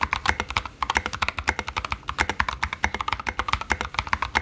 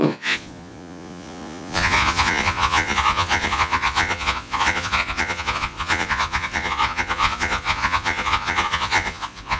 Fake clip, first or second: second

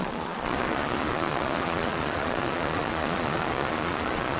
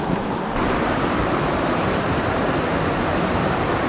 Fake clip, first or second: first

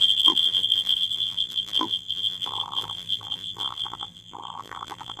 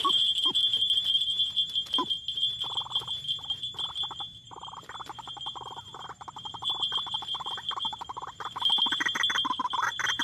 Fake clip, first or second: first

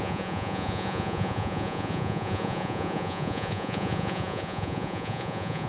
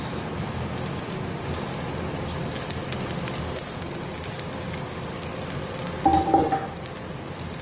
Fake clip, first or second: first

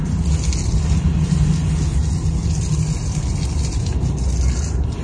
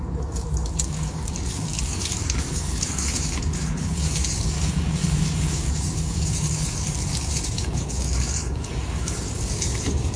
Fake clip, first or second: second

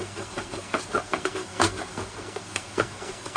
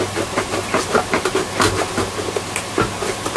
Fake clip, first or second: first